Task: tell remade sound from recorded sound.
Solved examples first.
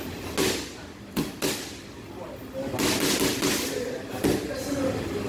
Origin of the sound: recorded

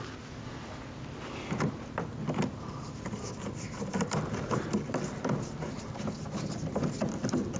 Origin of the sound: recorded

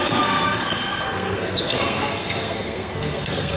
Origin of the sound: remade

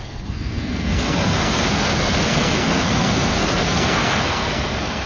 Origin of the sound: remade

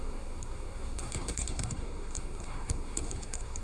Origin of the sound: remade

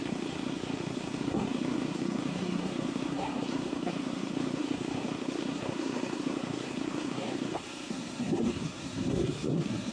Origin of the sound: remade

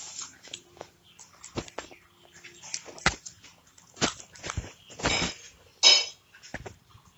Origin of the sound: recorded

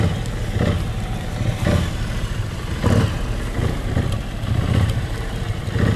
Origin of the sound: remade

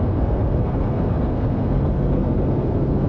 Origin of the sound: remade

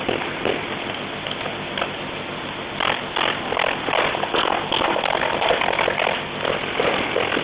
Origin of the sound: recorded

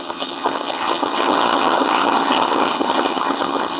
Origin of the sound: remade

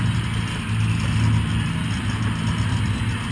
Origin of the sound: recorded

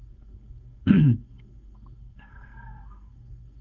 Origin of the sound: remade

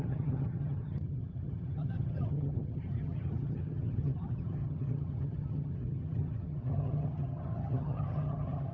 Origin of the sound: remade